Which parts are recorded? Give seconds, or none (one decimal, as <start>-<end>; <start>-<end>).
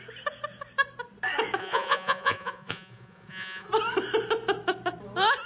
0.0-1.6; 3.7-5.5